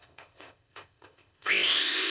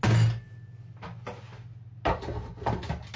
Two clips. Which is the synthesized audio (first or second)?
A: first